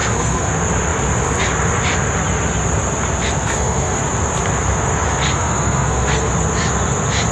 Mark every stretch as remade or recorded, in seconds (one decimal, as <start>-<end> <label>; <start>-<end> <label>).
0.0-0.5 remade; 0.5-3.4 recorded; 3.4-4.0 remade; 4.0-5.2 recorded; 5.2-6.3 remade; 6.3-7.3 recorded